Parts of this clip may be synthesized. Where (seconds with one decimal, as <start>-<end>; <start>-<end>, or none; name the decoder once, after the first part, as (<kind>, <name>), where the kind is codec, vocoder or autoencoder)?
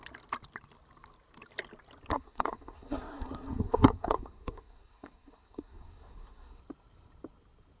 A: 2.1-6.6 (codec, SNAC)